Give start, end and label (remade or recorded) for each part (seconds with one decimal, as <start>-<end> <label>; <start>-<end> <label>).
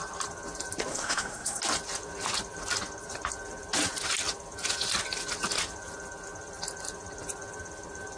0.0-0.9 recorded; 0.9-1.6 remade; 1.6-8.2 recorded